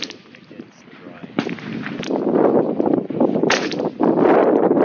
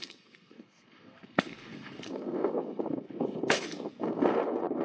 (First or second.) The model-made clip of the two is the second